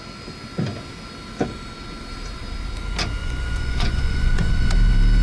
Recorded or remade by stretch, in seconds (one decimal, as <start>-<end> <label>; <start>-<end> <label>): 0.0-3.2 recorded; 3.2-4.7 remade; 4.7-5.2 recorded